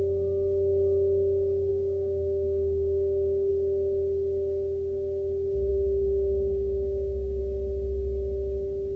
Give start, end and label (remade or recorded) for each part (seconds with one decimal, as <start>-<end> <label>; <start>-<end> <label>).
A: 0.0-1.7 recorded; 1.7-3.5 remade; 3.5-5.7 recorded; 5.7-7.4 remade; 7.4-9.0 recorded